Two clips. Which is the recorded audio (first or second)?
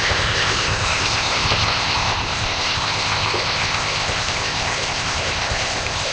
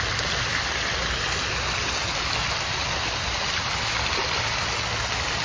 second